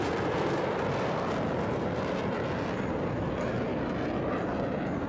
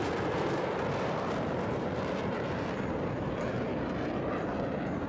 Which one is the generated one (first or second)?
second